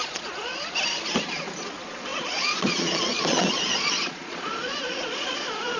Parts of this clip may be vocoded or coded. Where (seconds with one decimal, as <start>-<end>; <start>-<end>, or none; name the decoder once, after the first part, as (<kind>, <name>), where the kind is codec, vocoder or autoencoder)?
0.0-0.5 (vocoder, Vocos); 1.6-5.8